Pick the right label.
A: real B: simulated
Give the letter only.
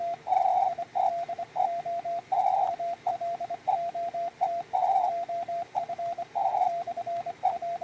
A